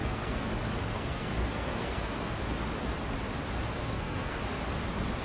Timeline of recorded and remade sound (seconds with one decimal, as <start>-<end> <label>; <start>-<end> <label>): 0.0-0.5 remade; 0.5-0.9 recorded; 0.9-2.3 remade; 2.3-3.8 recorded; 3.8-4.4 remade; 4.4-5.2 recorded